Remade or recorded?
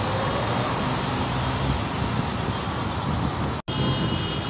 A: recorded